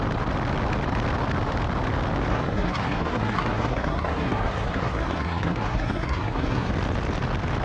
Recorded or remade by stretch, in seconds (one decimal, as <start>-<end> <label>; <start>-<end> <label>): 0.0-2.3 recorded; 2.3-6.7 remade; 6.7-7.6 recorded